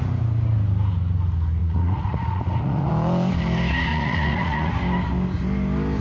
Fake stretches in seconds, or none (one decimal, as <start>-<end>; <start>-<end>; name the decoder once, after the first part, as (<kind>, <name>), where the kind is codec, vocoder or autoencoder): 1.6-2.9 (vocoder, Vocos); 3.9-4.7